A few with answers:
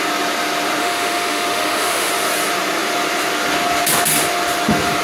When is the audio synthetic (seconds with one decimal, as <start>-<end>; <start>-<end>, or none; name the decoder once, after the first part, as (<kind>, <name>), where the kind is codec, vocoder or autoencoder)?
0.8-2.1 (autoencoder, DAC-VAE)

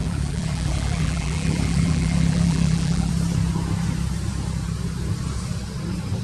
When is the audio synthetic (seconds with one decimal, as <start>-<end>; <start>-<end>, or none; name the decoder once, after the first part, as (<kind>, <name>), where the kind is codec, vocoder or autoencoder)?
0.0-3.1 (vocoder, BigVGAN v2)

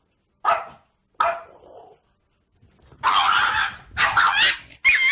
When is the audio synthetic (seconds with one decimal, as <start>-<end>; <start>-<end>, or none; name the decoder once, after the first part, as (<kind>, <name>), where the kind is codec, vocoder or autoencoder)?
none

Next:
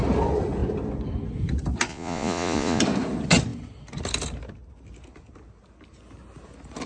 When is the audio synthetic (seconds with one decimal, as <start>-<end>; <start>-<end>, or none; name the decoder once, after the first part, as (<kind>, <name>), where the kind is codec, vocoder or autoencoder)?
1.9-2.8 (vocoder, Vocos)

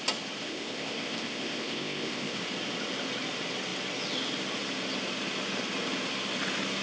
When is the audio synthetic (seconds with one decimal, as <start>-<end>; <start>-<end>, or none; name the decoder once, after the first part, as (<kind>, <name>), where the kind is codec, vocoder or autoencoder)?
0.4-2.4 (codec, ZipCodec)

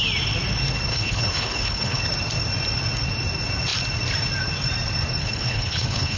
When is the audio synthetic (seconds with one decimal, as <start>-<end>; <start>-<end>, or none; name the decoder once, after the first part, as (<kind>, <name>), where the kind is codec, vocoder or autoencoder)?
0.9-2.0 (codec, HILCodec); 5.2-6.2